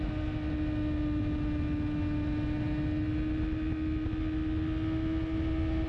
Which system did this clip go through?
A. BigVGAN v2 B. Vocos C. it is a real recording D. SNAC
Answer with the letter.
C